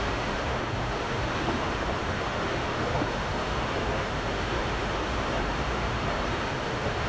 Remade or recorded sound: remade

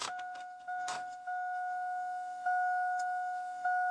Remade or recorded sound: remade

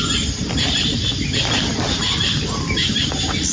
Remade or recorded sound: recorded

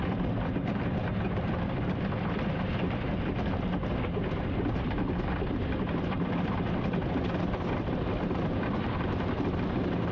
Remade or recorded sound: recorded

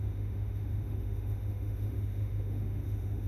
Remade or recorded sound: remade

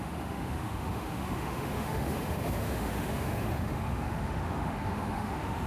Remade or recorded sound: remade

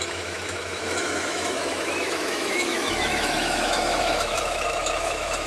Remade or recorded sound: remade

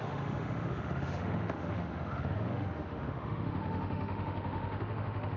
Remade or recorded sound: remade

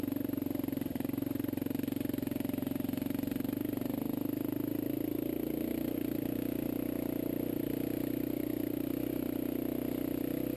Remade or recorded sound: recorded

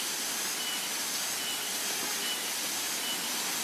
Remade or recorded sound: recorded